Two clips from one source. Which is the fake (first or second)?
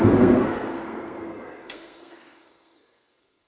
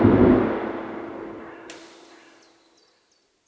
first